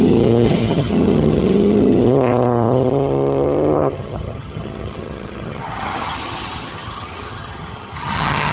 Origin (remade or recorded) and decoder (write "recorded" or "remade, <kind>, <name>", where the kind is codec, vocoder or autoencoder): remade, vocoder, HiFi-GAN